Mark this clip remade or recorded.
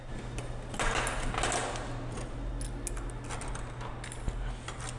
recorded